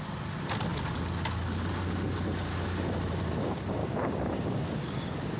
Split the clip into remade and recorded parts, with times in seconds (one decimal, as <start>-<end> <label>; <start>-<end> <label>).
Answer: 0.0-3.8 recorded; 3.8-5.4 remade